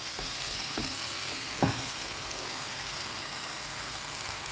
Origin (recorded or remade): remade